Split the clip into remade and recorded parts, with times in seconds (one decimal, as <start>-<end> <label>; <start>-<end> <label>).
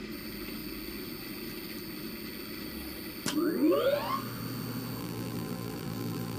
0.0-5.0 recorded; 5.0-6.4 remade